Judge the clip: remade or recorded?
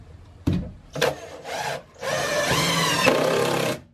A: remade